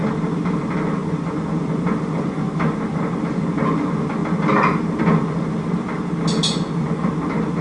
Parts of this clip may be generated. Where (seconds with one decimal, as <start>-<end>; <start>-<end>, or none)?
none